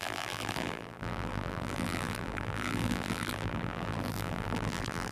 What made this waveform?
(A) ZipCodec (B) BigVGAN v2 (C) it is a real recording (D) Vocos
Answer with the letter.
B